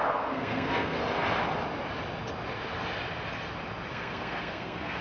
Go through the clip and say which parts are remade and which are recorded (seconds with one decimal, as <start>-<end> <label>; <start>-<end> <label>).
0.0-1.0 remade; 1.0-3.9 recorded; 3.9-5.0 remade